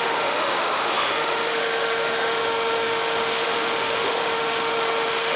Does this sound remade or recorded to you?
remade